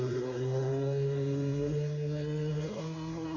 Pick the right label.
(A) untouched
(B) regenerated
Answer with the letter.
B